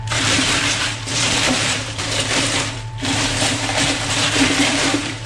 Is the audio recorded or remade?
remade